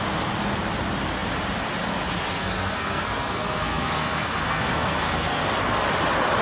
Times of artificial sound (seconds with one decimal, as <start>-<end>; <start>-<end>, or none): 2.3-5.4